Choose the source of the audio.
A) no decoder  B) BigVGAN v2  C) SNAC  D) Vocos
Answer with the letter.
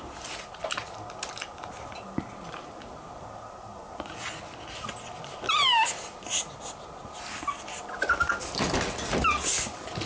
A